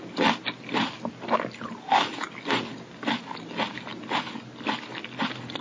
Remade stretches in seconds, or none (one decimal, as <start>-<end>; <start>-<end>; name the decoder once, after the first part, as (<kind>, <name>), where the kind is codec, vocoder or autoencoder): none

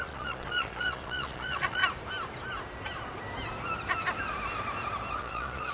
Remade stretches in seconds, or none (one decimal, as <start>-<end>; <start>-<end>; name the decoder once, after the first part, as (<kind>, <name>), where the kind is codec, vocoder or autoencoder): 0.0-1.8 (vocoder, Vocos); 5.2-5.7